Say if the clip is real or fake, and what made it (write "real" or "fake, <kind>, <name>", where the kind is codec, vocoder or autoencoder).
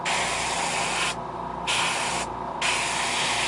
real